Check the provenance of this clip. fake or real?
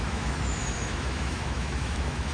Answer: fake